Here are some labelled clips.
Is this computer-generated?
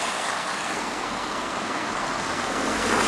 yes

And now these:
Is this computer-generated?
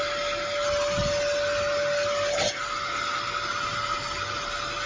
no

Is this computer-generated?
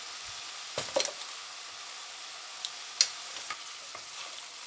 no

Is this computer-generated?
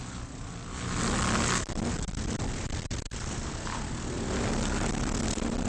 no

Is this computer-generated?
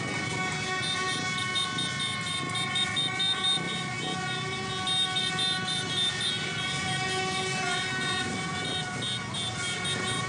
no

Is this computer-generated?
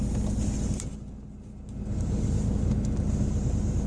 no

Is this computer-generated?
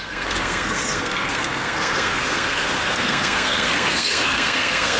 yes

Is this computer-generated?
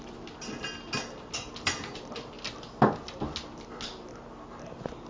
no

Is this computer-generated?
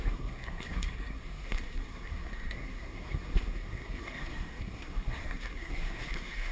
yes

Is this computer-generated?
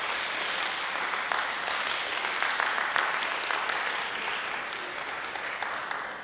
no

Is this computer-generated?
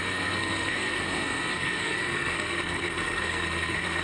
yes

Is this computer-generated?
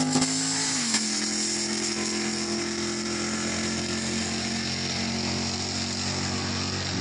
no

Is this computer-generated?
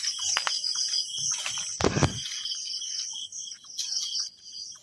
no